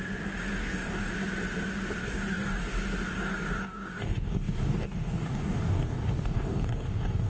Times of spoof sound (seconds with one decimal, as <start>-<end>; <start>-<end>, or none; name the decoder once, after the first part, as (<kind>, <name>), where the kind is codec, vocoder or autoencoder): 0.6-1.1 (codec, DAC); 2.0-2.6; 3.1-7.3